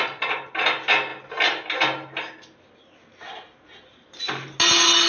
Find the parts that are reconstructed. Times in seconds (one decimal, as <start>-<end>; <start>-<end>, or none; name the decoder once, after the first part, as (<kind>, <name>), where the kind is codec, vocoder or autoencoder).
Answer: none